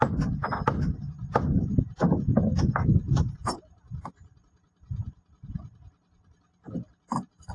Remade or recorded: recorded